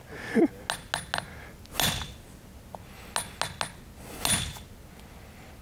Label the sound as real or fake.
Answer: real